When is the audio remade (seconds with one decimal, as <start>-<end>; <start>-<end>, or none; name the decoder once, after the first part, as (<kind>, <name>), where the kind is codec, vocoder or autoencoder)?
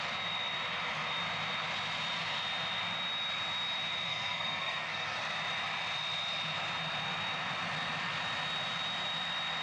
4.1-5.2 (codec, SNAC)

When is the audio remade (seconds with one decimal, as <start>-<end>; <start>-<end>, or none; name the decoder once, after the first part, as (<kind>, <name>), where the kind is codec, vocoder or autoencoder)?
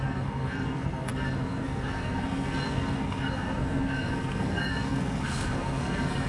0.0-6.3 (codec, SNAC)